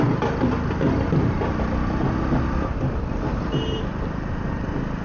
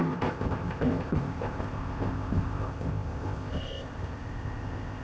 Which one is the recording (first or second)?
first